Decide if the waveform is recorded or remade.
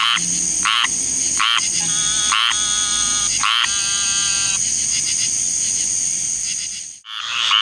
recorded